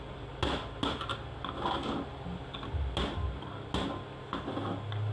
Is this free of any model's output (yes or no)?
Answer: yes